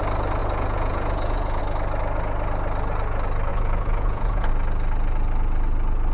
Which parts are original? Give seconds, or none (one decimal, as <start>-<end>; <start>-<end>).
0.0-0.4; 1.6-3.5; 4.5-6.1